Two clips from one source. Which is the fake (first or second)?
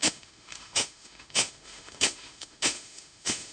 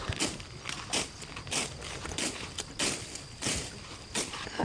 first